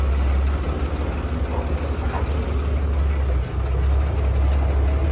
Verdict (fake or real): real